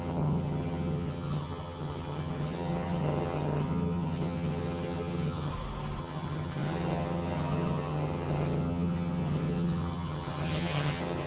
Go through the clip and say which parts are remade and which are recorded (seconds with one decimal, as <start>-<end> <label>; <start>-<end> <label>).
0.0-5.5 remade; 5.5-6.0 recorded; 6.0-11.3 remade